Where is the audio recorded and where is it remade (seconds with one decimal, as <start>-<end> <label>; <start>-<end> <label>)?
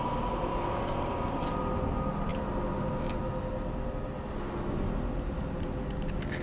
0.0-0.5 recorded; 0.5-1.3 remade; 1.3-6.4 recorded